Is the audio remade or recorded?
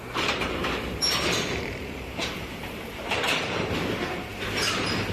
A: remade